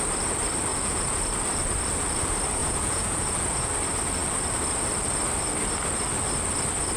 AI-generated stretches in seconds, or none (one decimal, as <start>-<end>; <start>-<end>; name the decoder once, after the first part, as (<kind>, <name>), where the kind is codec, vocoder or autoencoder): 0.7-1.2 (vocoder, Vocos); 2.6-3.7